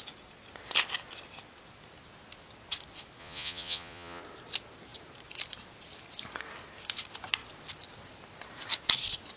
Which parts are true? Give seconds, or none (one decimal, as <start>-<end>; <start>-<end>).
0.0-3.2; 4.2-9.4